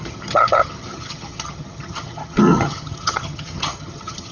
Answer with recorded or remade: remade